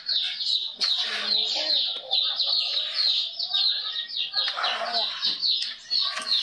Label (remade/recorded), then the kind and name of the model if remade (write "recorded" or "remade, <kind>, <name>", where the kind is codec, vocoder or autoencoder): recorded